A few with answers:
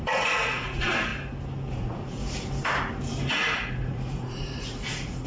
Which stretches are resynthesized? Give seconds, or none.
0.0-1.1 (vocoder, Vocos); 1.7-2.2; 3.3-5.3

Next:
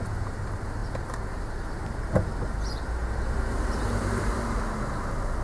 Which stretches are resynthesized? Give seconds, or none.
none